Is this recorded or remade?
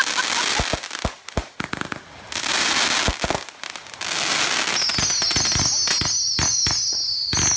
recorded